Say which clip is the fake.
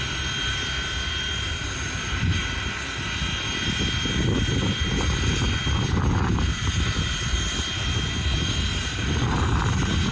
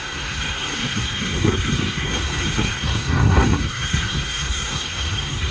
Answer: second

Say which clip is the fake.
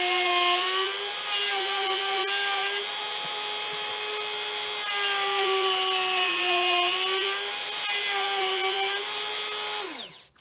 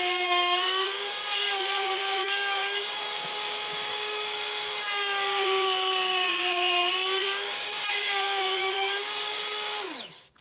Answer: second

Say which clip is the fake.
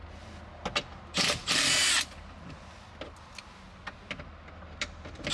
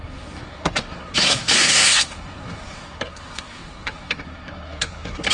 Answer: second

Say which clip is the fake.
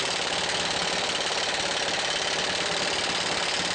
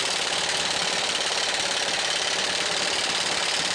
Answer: second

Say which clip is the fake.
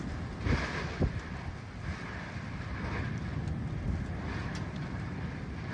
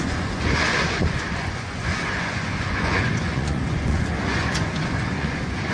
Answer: second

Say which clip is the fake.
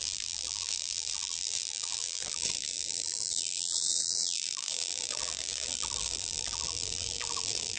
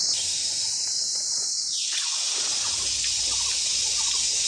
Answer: first